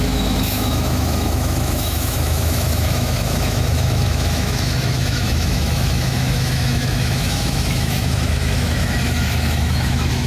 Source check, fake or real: fake